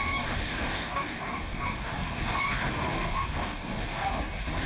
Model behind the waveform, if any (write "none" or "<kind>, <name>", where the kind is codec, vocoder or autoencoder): codec, DAC